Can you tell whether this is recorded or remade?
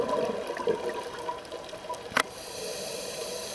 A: recorded